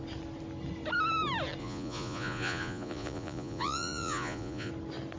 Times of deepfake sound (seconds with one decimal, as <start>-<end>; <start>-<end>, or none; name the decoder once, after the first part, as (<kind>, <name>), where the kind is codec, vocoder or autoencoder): 1.6-4.7 (vocoder, Vocos)